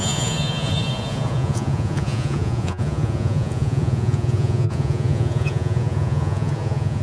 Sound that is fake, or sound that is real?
fake